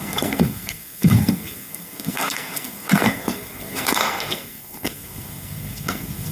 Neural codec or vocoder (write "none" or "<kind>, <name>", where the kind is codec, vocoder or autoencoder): codec, SNAC